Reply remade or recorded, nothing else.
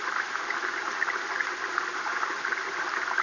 recorded